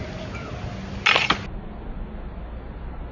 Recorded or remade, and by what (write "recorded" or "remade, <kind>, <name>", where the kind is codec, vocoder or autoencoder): recorded